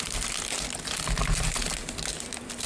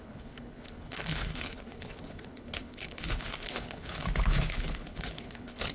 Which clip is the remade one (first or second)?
second